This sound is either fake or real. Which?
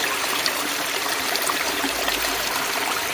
fake